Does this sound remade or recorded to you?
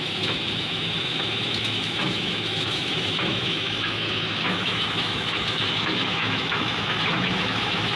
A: remade